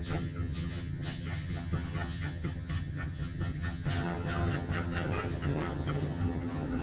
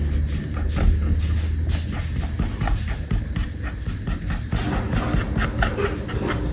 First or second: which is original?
second